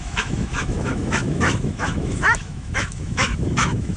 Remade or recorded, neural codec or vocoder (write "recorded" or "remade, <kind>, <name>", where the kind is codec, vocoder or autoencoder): remade, autoencoder, DAC-VAE